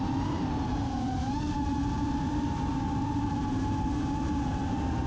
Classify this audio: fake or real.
fake